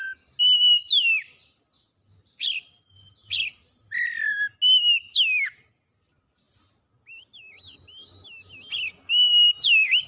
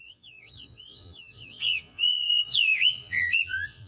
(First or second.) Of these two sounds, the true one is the first